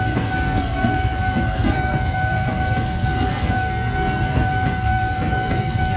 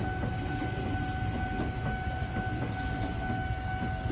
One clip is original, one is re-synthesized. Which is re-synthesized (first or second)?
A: first